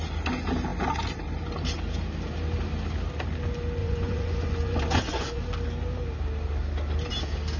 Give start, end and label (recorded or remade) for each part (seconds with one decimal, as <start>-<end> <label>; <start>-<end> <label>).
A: 0.0-3.8 recorded; 3.8-5.4 remade; 5.4-7.6 recorded

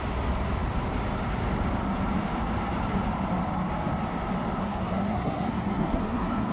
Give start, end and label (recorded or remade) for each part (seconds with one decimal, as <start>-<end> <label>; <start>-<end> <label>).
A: 0.0-4.6 recorded; 4.6-6.5 remade